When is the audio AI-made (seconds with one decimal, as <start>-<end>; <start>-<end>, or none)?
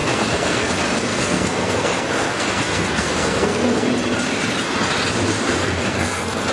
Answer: 0.0-0.7; 1.1-3.9; 5.6-6.5